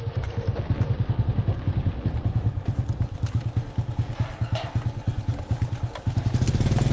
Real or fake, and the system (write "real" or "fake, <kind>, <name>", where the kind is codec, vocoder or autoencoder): real